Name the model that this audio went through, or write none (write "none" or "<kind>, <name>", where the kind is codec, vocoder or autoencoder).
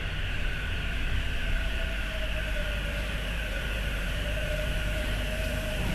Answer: vocoder, BigVGAN v2